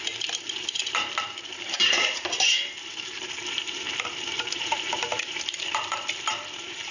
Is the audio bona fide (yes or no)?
no